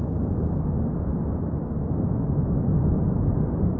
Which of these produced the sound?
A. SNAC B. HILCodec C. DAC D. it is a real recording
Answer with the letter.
D